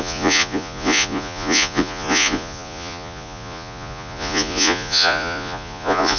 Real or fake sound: fake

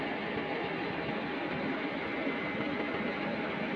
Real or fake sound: real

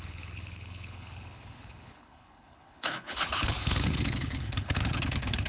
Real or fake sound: fake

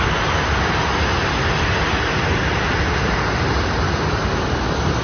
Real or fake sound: real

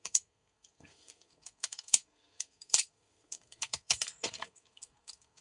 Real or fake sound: fake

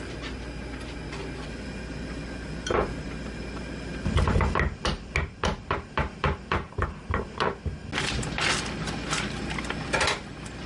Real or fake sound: real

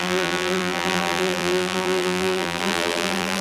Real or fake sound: fake